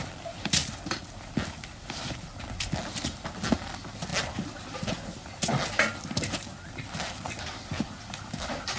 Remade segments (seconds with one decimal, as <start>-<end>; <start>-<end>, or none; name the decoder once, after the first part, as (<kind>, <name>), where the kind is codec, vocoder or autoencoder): none